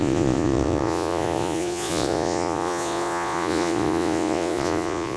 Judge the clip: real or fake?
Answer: fake